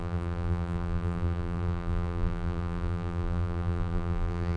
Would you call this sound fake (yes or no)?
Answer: yes